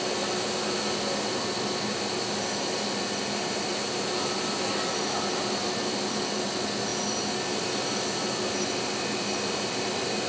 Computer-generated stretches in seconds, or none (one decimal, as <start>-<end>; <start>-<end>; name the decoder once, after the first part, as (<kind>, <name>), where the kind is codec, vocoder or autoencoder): none